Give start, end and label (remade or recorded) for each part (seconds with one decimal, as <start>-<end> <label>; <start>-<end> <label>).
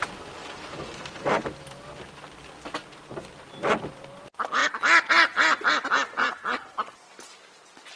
0.0-8.0 recorded